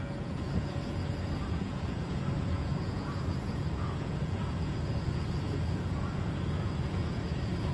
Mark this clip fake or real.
fake